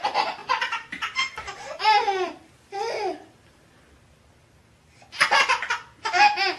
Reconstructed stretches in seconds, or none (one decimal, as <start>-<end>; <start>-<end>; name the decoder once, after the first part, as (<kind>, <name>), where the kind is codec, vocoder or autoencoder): none

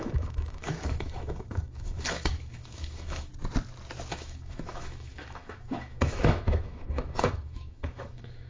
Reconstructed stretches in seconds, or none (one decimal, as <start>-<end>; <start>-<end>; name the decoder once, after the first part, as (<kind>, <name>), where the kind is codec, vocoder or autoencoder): 0.0-3.3 (autoencoder, DAC-VAE); 4.1-8.5

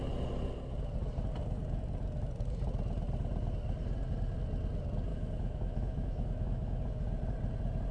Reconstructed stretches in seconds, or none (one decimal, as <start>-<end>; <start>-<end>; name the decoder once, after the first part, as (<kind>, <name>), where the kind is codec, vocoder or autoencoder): 5.1-6.8 (autoencoder, DAC-VAE)